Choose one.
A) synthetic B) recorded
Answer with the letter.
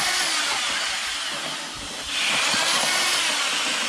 B